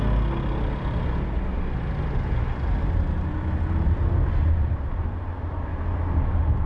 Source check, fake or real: real